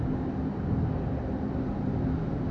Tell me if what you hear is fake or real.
real